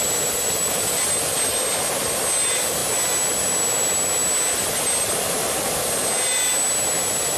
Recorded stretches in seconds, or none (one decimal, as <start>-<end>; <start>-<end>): 0.0-7.4